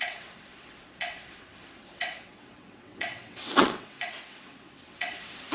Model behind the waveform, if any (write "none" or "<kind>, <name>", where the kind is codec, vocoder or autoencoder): vocoder, WaveNeXt